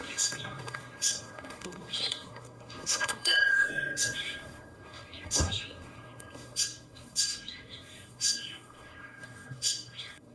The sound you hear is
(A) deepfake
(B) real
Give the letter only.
A